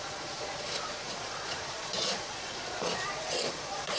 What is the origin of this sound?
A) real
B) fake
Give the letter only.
B